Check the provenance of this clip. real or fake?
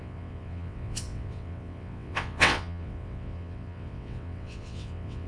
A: fake